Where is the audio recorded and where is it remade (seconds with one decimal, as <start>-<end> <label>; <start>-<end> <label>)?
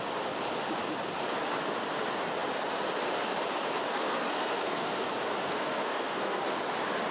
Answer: 0.0-3.9 recorded; 3.9-5.0 remade; 5.0-5.4 recorded; 5.4-6.4 remade; 6.4-7.1 recorded